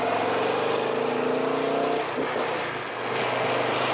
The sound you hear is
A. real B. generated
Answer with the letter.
A